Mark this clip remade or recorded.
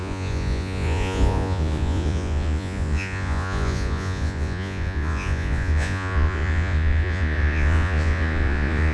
remade